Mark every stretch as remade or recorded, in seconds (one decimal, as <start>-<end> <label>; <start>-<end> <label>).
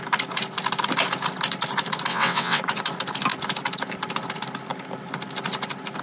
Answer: 0.0-2.1 recorded; 2.1-2.6 remade; 2.6-6.0 recorded